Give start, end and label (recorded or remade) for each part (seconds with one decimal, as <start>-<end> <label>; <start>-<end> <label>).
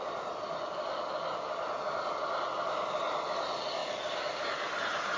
0.0-5.2 recorded